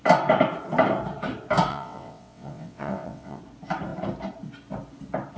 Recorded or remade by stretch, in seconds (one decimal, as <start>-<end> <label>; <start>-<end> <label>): 0.0-1.7 recorded; 1.7-3.4 remade; 3.4-5.4 recorded